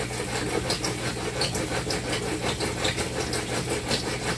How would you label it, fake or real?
real